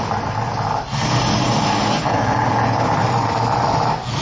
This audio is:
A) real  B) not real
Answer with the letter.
A